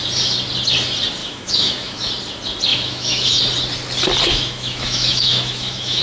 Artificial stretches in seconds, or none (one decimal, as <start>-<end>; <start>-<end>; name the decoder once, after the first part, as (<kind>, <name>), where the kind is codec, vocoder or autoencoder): 1.2-2.1 (autoencoder, DAC-VAE); 2.7-3.4; 4.3-6.0